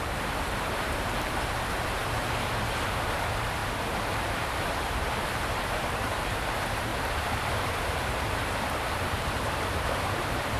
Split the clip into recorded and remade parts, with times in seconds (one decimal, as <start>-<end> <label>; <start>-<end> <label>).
0.0-3.6 remade; 3.6-4.2 recorded; 4.2-6.9 remade; 6.9-7.6 recorded; 7.6-10.6 remade